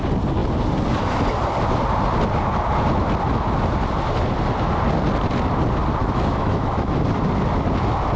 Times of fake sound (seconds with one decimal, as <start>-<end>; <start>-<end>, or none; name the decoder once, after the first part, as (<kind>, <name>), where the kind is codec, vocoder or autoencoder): 6.0-7.0 (autoencoder, DAC-VAE)